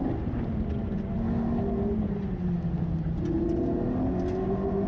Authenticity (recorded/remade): recorded